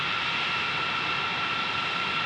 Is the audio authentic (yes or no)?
yes